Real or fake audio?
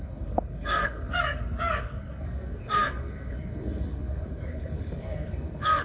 fake